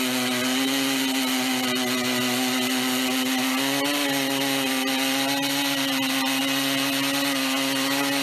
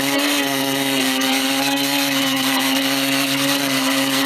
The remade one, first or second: second